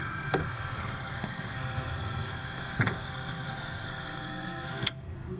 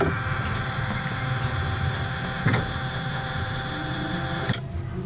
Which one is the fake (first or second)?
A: first